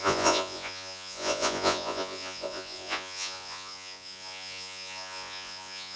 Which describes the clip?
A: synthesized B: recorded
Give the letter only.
A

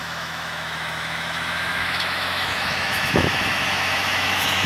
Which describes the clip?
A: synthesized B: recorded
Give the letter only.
A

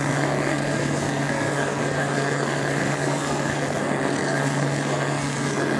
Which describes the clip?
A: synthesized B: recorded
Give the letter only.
A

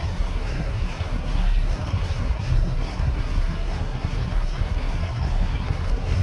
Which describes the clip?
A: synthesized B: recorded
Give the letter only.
A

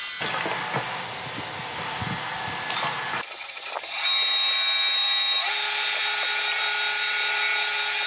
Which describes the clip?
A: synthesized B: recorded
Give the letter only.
B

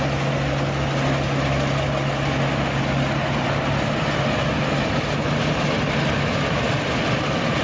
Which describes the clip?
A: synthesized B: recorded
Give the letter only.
B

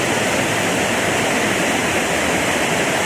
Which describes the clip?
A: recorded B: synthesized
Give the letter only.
B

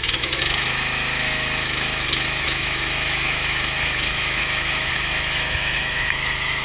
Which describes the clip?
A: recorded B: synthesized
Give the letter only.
B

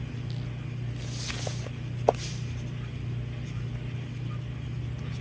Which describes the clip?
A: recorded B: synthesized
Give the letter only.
A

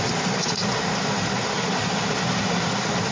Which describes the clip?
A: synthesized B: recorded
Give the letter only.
B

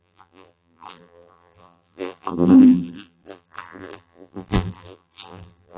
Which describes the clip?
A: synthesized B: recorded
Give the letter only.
A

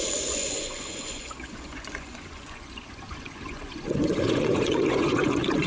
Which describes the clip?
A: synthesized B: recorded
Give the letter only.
A